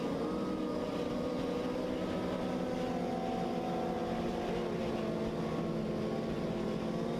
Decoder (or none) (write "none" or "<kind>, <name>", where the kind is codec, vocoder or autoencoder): none